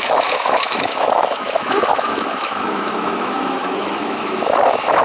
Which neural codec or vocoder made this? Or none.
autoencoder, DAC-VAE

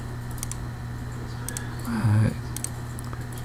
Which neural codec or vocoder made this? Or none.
none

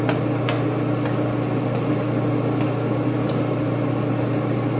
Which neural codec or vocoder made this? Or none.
none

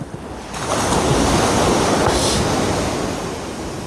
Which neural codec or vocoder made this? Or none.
none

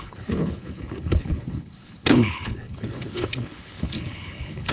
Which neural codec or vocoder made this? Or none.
codec, HILCodec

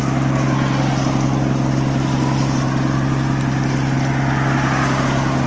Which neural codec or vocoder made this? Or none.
none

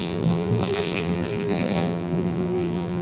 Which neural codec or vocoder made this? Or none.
vocoder, BigVGAN v2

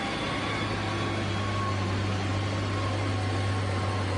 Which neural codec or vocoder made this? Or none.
none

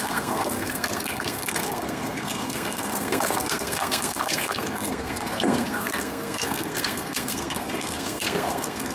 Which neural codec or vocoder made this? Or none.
codec, SNAC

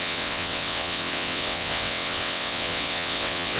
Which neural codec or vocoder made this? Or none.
vocoder, WaveNeXt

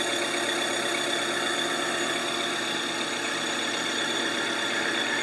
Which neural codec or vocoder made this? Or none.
none